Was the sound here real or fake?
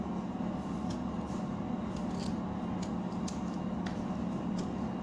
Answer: real